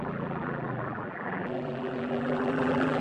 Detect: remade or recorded remade